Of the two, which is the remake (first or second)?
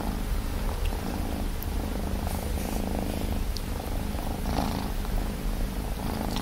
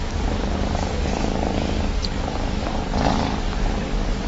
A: second